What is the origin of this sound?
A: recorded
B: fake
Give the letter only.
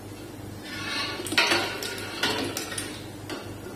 A